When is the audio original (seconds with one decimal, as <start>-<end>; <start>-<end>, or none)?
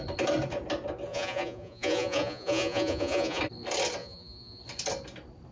0.0-1.1; 3.4-4.0; 4.6-5.5